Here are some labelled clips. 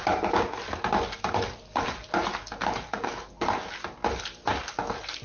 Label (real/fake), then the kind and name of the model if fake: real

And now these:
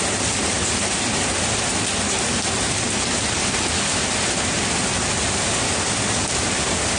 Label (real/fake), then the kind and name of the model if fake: real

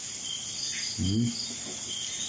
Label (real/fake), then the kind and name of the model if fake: real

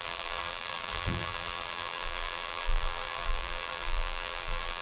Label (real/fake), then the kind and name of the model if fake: fake, vocoder, BigVGAN v2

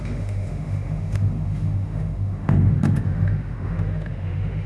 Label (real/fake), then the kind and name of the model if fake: fake, autoencoder, DAC-VAE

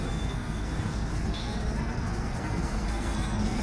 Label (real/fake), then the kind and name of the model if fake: fake, codec, SNAC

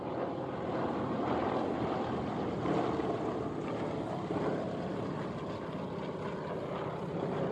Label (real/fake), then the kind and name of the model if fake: real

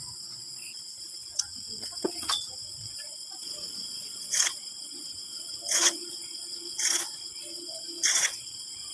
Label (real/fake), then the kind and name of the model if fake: fake, vocoder, Vocos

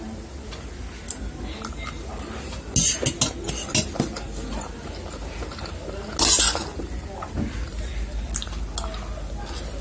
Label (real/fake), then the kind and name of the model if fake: real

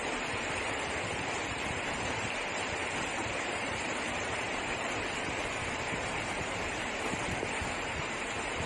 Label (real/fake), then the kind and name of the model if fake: fake, vocoder, BigVGAN v2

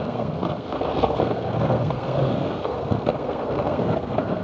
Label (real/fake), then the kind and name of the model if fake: fake, codec, SNAC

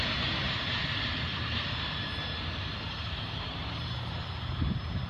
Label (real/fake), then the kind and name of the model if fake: fake, vocoder, BigVGAN v2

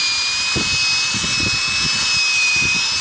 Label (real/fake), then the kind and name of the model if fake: real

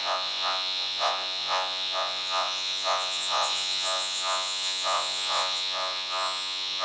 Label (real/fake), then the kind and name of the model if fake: fake, vocoder, Vocos